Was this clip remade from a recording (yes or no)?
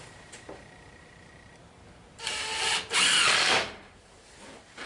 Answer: yes